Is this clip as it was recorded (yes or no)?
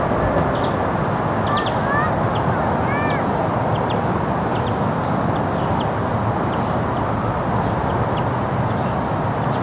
yes